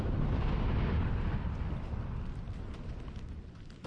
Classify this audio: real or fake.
real